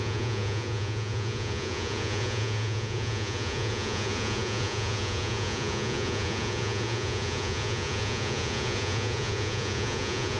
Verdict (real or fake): fake